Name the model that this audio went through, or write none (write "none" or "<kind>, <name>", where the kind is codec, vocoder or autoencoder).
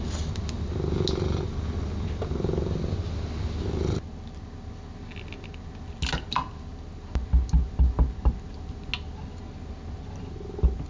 none